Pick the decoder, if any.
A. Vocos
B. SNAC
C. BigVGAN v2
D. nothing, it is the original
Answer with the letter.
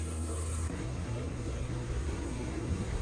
B